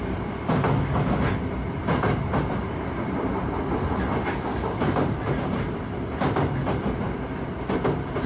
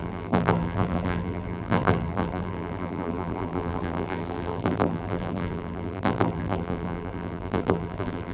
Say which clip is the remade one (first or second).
second